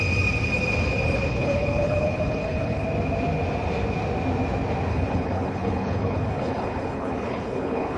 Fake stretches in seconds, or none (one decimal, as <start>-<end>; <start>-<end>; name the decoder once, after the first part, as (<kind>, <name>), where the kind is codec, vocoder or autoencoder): 1.3-2.8 (codec, HILCodec); 4.9-8.0